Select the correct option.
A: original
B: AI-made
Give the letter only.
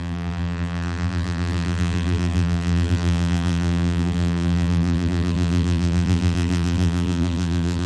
B